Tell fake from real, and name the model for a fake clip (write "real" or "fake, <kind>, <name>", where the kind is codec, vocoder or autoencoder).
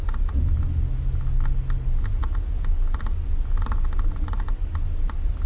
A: real